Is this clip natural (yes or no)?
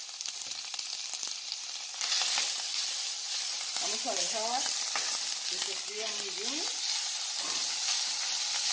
yes